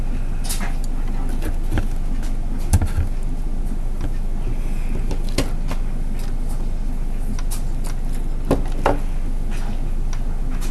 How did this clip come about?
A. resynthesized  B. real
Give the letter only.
B